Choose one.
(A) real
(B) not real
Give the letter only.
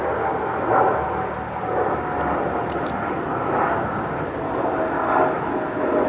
A